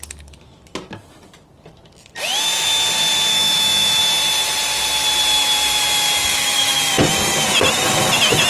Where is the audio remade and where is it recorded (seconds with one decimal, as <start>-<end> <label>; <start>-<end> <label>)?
0.0-3.3 recorded; 3.3-4.0 remade; 4.0-6.3 recorded; 6.3-6.8 remade; 6.8-8.5 recorded